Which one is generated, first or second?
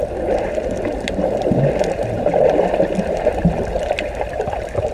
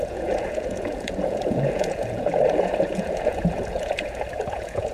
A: second